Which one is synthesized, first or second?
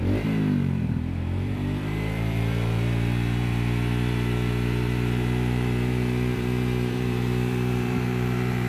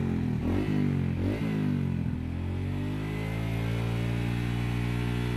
first